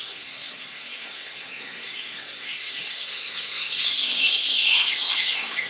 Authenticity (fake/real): fake